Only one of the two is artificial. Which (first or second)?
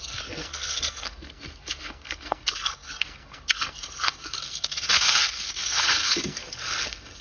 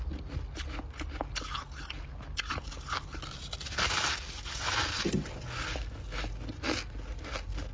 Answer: first